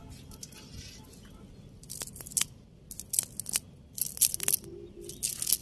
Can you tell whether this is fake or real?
real